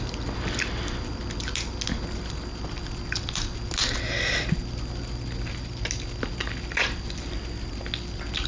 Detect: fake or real real